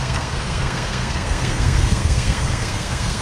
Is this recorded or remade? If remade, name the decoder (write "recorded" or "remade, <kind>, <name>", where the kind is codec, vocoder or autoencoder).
remade, codec, SNAC